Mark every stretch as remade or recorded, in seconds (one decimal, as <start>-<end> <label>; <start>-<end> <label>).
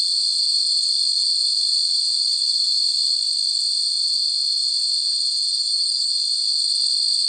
0.0-5.6 recorded; 5.6-6.1 remade; 6.1-7.3 recorded